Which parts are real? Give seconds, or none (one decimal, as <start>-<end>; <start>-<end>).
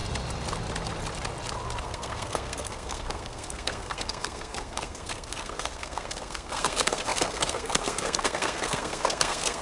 0.0-1.8